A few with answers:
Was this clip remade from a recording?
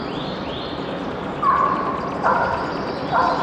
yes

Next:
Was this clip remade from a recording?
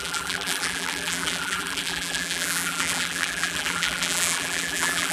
yes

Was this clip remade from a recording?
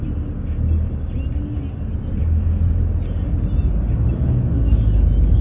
no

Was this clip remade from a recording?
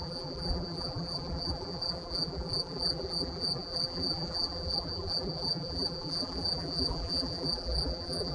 yes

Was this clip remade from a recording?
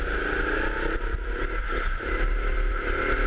yes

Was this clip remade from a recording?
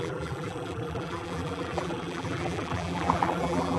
yes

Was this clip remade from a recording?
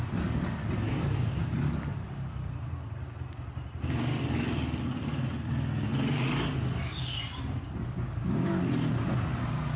no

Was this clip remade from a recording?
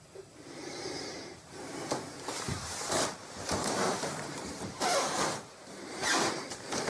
yes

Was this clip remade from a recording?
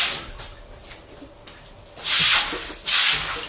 no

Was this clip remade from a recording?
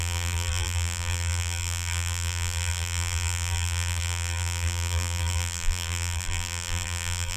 yes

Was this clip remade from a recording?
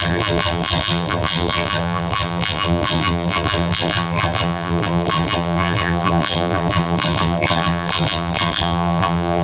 yes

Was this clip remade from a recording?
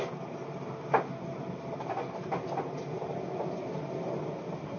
no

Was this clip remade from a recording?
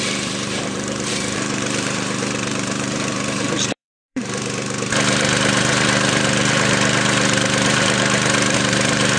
yes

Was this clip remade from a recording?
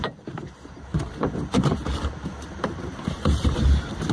yes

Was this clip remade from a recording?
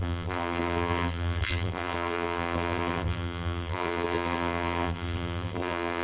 yes